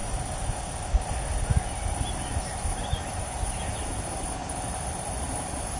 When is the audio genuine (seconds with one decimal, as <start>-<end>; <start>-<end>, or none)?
0.0-5.8